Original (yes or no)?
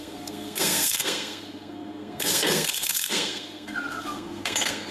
no